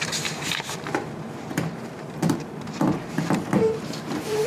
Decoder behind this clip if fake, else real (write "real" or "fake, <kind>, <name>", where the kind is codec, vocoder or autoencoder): fake, vocoder, BigVGAN v2